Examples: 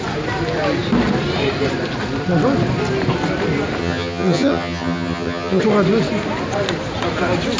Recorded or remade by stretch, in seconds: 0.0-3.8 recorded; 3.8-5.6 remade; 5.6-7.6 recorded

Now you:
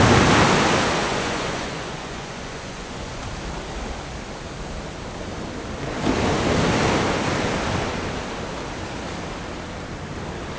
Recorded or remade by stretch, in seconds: 0.0-1.0 recorded; 1.0-3.2 remade; 3.2-10.6 recorded

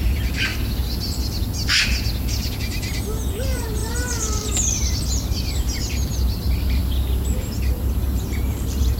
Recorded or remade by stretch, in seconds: 0.0-0.5 remade; 0.5-3.3 recorded; 3.3-6.8 remade; 6.8-7.4 recorded; 7.4-9.0 remade